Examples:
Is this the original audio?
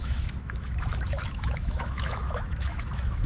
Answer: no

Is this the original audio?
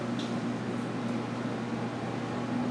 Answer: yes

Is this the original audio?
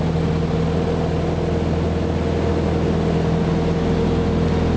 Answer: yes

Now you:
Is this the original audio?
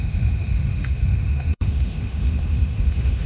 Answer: no